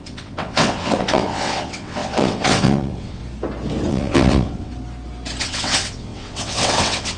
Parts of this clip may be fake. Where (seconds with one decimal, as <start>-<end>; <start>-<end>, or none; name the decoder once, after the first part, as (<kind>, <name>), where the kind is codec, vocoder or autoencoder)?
0.0-3.2 (vocoder, WaveNeXt); 3.9-4.7; 5.4-7.2

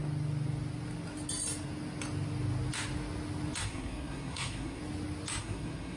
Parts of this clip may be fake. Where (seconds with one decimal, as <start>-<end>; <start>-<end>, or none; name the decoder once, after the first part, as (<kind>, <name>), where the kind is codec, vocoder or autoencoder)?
3.6-4.8 (codec, SNAC); 5.4-6.0